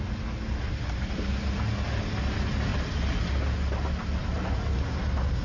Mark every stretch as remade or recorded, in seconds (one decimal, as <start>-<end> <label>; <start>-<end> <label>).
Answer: 0.0-5.4 recorded